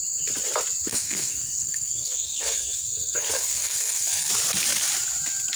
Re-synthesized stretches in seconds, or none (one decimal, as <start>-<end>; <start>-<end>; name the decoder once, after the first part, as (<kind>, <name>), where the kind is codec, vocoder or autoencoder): 0.9-4.3 (codec, SNAC)